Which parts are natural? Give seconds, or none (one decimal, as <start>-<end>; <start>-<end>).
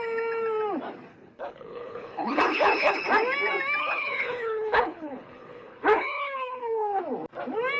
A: 0.0-1.1; 3.0-3.8; 7.0-7.8